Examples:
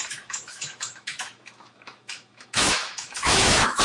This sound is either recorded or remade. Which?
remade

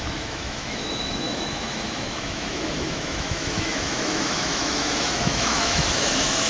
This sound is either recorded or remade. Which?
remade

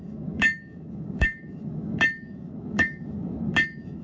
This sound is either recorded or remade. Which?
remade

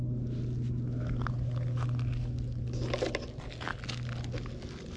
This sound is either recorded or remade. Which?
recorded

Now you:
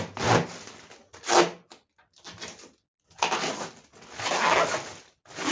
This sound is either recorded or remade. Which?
recorded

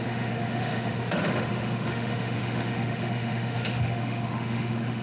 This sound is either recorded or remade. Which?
remade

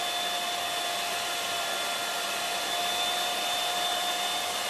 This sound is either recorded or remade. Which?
recorded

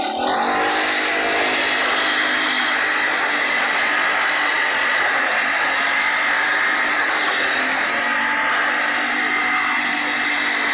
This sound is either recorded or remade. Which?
recorded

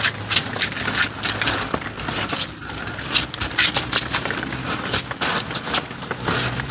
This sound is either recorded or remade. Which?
recorded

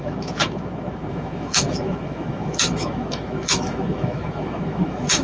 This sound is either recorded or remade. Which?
remade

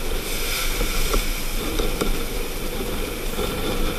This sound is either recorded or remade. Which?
recorded